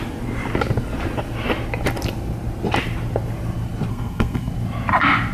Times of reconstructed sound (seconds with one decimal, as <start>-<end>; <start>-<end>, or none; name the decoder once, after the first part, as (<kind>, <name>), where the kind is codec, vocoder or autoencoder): 3.9-4.5 (codec, SNAC)